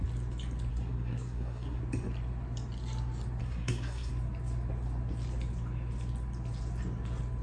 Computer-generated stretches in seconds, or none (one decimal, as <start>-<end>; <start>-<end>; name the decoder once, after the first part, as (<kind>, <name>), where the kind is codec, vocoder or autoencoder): 0.7-1.8 (codec, SNAC); 3.4-4.1